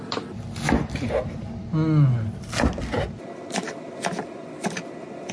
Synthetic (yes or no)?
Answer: no